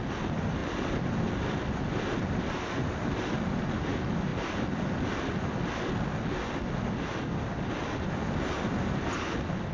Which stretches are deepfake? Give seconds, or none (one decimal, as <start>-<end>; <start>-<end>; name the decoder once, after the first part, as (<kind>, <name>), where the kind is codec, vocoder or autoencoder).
none

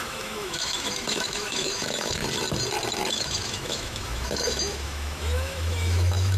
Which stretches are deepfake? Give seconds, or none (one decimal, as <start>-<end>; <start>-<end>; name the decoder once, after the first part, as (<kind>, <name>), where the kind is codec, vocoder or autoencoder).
0.0-2.2 (autoencoder, DAC-VAE); 3.1-6.4

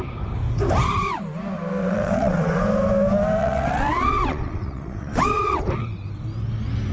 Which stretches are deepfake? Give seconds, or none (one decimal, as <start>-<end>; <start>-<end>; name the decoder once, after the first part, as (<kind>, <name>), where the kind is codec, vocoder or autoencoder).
1.8-2.6 (vocoder, WaveNeXt); 3.4-5.6

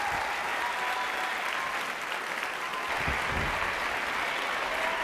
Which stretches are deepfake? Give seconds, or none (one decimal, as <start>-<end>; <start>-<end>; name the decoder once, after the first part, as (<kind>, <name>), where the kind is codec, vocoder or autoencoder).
2.7-3.7 (vocoder, BigVGAN v2)

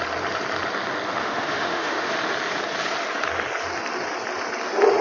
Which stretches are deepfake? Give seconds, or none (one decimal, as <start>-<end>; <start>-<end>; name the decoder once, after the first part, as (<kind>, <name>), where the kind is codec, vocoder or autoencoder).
1.2-2.1 (autoencoder, DAC-VAE)